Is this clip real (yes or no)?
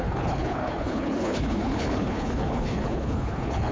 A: no